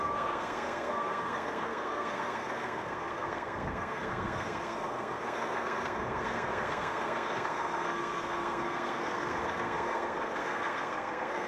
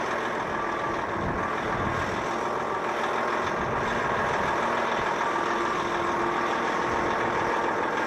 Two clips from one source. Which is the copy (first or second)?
first